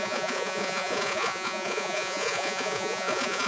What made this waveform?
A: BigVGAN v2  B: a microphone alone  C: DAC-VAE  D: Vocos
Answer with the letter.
D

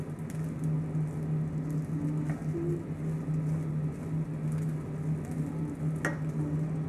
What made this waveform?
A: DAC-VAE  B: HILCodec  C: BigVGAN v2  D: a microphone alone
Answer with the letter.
D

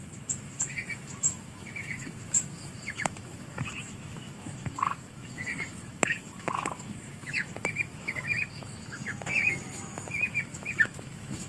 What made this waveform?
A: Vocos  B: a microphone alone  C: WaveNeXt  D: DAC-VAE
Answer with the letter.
D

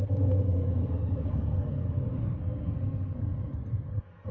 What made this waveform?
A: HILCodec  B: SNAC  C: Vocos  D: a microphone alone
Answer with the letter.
B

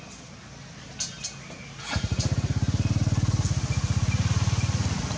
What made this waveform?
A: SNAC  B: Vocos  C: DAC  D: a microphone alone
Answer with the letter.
D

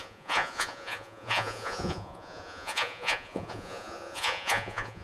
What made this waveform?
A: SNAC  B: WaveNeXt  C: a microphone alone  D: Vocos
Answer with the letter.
D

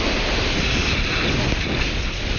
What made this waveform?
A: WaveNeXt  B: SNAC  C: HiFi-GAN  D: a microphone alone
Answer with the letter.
D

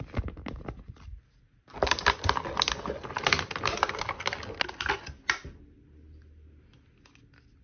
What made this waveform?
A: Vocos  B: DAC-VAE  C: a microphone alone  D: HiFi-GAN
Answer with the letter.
C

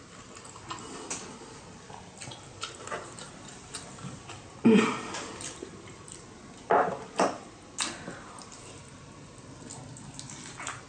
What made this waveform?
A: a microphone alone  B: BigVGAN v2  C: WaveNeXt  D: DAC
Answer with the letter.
A